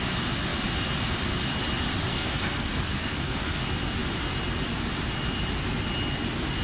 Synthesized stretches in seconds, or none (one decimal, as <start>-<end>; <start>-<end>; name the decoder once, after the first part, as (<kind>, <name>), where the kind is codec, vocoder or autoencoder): 2.1-3.6 (codec, SNAC)